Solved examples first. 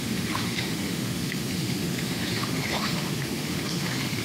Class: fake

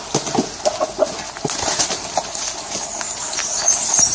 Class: real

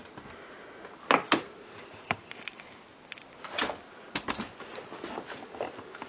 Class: real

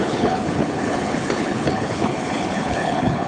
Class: fake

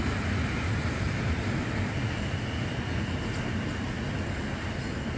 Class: real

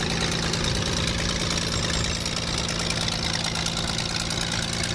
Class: real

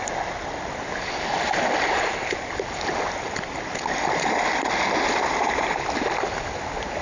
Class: real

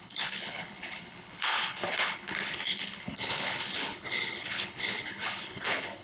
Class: fake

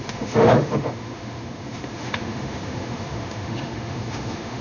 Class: fake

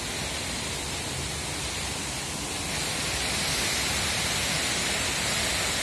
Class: real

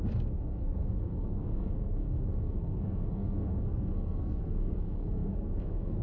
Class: fake